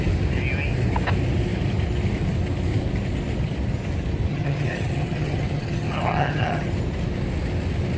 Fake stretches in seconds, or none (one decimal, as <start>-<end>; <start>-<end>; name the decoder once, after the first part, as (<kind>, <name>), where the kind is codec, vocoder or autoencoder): 4.3-6.7 (vocoder, HiFi-GAN)